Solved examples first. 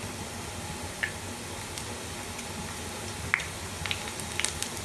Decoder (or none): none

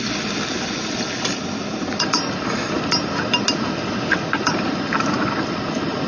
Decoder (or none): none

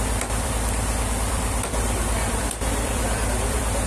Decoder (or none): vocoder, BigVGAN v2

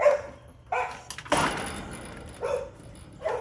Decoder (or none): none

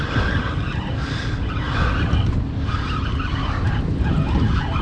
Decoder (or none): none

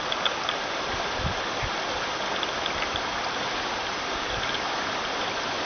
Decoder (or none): none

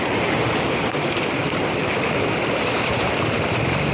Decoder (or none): vocoder, BigVGAN v2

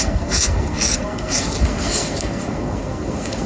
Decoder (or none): codec, SNAC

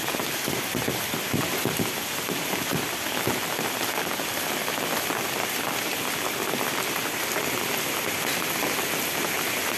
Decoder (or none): none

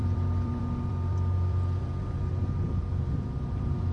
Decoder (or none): vocoder, BigVGAN v2